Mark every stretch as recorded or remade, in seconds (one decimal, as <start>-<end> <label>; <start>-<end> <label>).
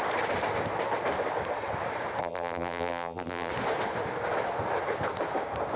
0.0-2.2 recorded; 2.2-3.5 remade; 3.5-5.8 recorded